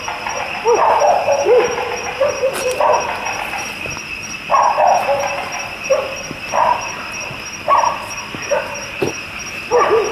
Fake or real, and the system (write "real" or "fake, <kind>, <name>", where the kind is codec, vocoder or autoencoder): real